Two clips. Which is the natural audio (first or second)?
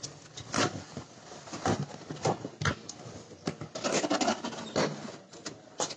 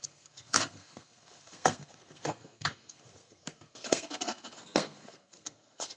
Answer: first